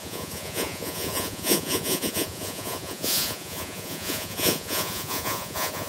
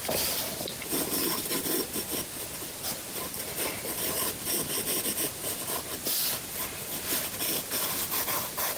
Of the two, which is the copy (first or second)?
first